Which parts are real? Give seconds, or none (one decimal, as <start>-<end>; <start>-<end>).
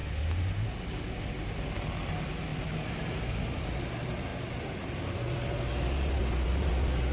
0.0-7.1